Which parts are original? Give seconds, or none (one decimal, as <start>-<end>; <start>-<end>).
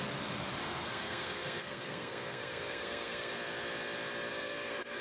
0.0-0.6; 3.3-4.3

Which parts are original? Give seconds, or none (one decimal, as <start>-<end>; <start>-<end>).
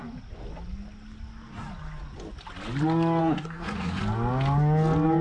0.0-3.2; 4.0-5.2